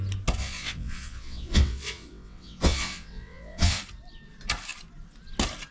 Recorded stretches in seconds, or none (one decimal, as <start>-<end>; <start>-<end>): 0.0-0.4; 3.8-5.7